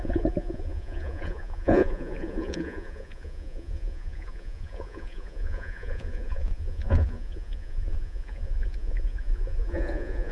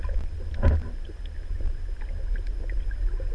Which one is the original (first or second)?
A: second